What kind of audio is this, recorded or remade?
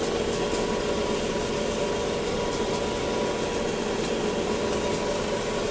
recorded